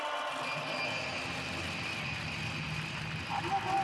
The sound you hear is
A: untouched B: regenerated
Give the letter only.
A